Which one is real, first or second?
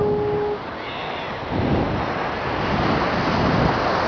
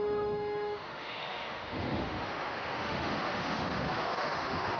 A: first